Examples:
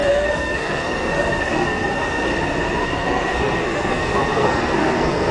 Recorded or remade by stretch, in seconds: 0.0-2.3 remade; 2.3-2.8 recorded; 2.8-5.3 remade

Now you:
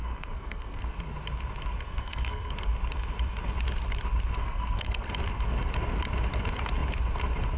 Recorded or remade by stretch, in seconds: 0.0-0.9 remade; 0.9-1.9 recorded; 1.9-2.5 remade; 2.5-4.4 recorded; 4.4-5.1 remade; 5.1-7.6 recorded

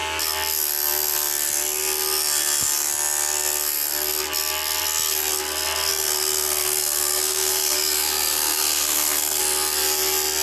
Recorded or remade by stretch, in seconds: 0.0-5.9 recorded; 5.9-9.4 remade; 9.4-10.4 recorded